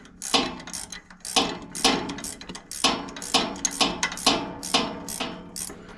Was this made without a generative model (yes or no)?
yes